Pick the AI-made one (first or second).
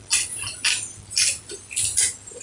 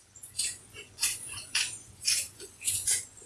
second